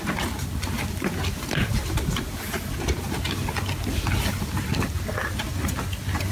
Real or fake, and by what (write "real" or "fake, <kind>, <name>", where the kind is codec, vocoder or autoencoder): real